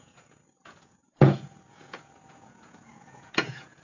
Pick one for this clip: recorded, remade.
remade